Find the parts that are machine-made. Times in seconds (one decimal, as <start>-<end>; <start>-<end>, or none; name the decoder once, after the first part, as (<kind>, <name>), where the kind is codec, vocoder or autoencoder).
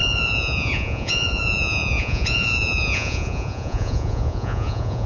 0.0-5.1 (vocoder, Vocos)